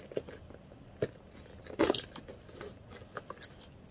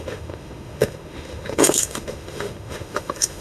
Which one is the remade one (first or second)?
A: second